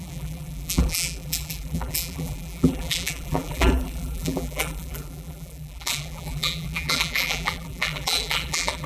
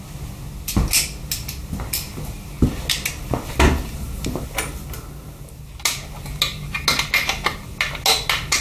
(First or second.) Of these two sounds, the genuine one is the second